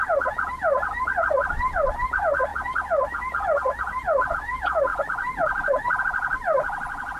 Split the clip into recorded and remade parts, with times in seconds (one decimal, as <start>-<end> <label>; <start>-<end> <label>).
0.0-7.2 recorded